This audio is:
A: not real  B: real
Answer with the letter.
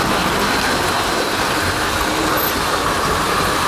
B